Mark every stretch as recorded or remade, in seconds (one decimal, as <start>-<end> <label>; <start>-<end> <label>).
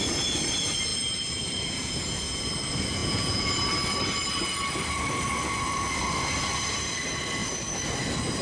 0.0-0.9 recorded; 0.9-2.4 remade; 2.4-3.0 recorded; 3.0-3.5 remade; 3.5-8.4 recorded